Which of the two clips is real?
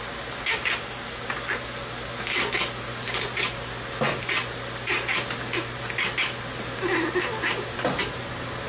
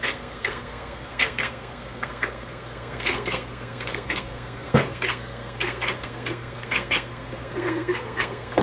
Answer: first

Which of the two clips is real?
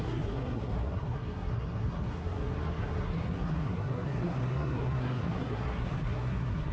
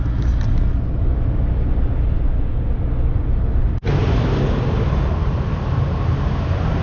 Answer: second